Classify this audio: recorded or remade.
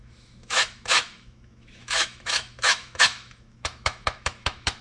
remade